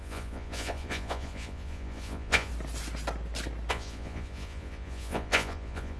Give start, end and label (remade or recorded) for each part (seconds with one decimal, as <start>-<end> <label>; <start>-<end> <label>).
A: 0.0-2.5 remade; 2.5-3.7 recorded; 3.7-6.0 remade